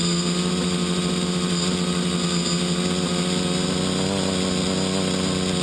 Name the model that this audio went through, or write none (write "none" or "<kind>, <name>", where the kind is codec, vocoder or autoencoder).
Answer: none